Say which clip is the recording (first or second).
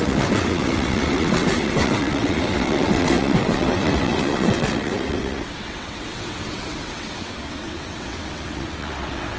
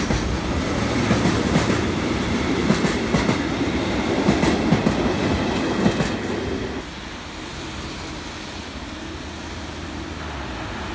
second